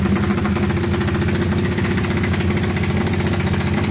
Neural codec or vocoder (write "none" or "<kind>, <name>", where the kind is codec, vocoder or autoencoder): none